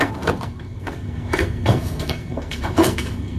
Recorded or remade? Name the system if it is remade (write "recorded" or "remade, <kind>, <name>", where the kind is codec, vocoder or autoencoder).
remade, codec, SNAC